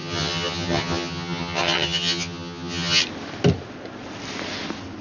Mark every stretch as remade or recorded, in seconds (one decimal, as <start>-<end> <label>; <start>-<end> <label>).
0.0-3.0 remade; 3.0-5.0 recorded